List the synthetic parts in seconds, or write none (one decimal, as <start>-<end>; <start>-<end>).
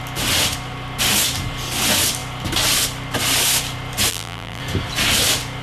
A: 4.1-4.6